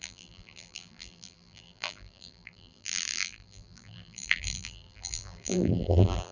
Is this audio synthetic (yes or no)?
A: yes